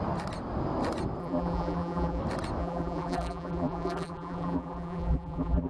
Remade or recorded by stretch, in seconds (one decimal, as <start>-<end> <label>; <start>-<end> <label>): 0.0-1.2 recorded; 1.2-2.2 remade; 2.2-2.6 recorded; 2.6-5.7 remade